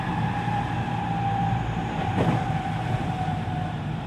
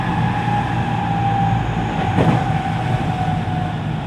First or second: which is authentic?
second